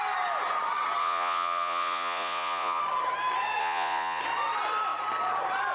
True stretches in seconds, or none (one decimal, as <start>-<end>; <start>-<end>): 0.0-1.0; 2.8-3.6; 4.2-5.7